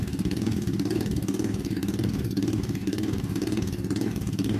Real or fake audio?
fake